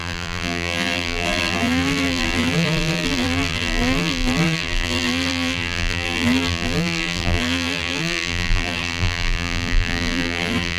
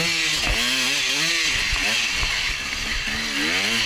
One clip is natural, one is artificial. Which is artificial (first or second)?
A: first